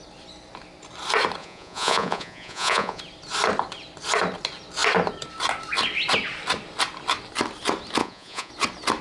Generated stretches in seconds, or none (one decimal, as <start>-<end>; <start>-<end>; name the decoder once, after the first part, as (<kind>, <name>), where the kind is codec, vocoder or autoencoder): 1.4-3.0 (vocoder, Vocos); 8.0-8.5